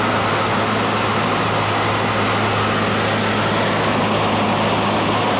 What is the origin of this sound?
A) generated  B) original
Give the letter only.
B